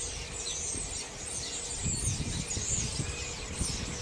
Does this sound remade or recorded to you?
recorded